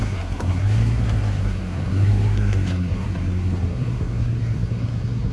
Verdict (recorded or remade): remade